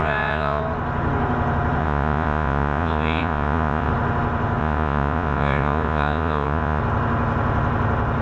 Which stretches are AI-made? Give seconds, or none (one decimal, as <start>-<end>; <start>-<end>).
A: 0.0-0.6; 1.8-3.9; 4.6-6.8